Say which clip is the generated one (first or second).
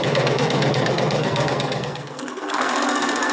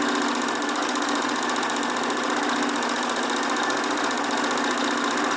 first